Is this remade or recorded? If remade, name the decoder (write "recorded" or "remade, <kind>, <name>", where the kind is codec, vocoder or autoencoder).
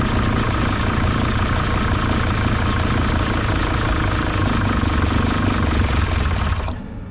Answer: recorded